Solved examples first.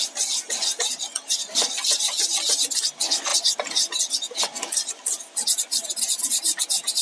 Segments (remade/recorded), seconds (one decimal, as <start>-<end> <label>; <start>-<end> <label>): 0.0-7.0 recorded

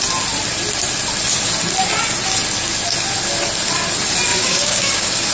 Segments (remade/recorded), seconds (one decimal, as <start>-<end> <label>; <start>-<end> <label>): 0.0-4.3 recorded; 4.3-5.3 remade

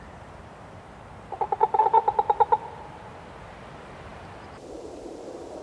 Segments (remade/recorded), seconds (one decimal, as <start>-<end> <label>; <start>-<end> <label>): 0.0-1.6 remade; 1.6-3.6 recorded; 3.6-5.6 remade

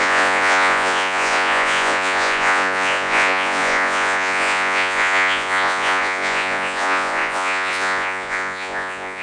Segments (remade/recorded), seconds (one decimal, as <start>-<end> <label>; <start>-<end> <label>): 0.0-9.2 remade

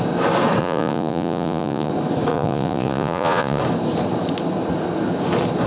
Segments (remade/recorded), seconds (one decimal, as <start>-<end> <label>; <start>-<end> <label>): 0.0-0.6 recorded; 0.6-1.9 remade; 1.9-2.3 recorded; 2.3-3.6 remade; 3.6-5.7 recorded